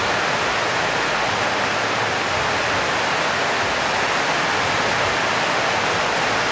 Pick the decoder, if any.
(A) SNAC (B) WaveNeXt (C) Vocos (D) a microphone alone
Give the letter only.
D